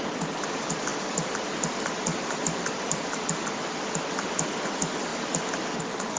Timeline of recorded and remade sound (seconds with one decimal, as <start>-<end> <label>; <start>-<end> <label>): 0.0-2.1 recorded; 2.1-3.7 remade; 3.7-6.2 recorded